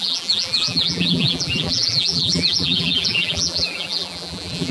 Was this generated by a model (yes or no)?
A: yes